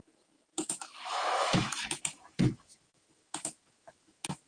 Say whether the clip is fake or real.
fake